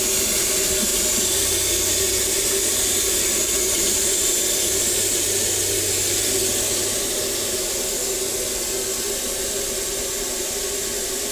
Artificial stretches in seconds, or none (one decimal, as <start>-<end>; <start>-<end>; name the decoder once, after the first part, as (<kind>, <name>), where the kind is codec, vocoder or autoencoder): 0.9-1.5 (vocoder, BigVGAN v2); 3.4-4.4